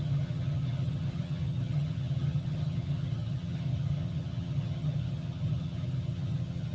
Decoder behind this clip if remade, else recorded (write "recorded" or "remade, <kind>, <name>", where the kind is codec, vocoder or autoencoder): remade, vocoder, HiFi-GAN